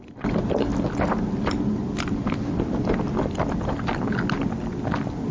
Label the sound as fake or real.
real